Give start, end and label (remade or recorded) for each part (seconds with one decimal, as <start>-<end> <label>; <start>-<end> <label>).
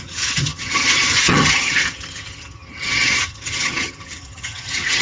0.0-5.0 remade